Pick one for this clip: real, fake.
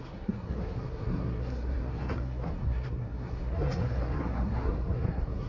fake